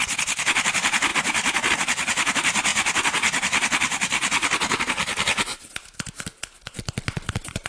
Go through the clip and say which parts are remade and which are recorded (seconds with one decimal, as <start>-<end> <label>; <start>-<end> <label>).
0.0-7.7 recorded

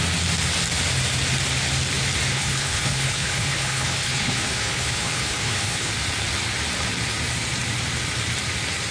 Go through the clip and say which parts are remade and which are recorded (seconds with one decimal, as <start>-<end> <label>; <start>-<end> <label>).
0.0-2.3 recorded; 2.3-5.9 remade; 5.9-8.9 recorded

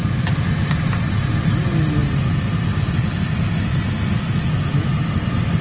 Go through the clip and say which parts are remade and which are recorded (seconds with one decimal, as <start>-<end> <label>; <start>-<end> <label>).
0.0-5.6 recorded

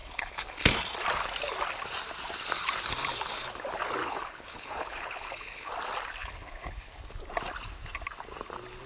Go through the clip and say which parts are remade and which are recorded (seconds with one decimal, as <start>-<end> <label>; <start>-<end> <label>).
0.0-0.7 remade; 0.7-4.0 recorded; 4.0-5.7 remade; 5.7-6.2 recorded; 6.2-6.9 remade; 6.9-8.9 recorded